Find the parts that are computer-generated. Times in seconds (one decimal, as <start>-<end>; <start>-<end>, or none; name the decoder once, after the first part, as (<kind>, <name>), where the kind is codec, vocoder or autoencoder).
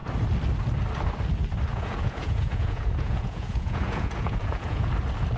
1.7-4.9 (vocoder, Vocos)